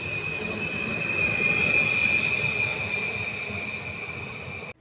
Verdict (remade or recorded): recorded